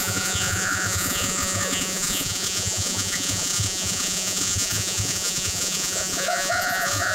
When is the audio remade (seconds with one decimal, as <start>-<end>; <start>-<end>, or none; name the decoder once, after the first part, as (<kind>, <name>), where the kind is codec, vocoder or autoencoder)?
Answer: 0.0-7.1 (vocoder, Vocos)